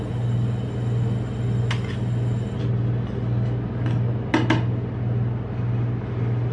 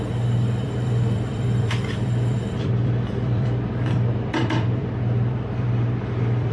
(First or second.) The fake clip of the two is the second